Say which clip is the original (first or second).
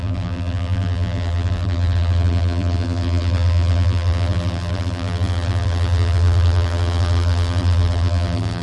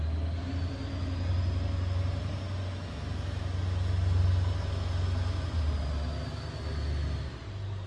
second